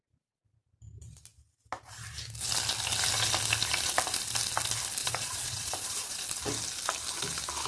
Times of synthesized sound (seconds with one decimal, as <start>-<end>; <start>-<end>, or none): 5.0-6.2